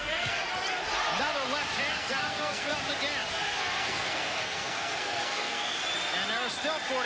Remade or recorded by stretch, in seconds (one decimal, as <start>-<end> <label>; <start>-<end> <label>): 0.0-0.4 remade; 0.4-1.9 recorded; 1.9-2.7 remade; 2.7-3.3 recorded; 3.3-5.8 remade; 5.8-7.1 recorded